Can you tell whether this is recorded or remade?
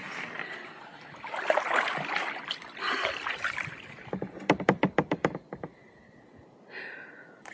recorded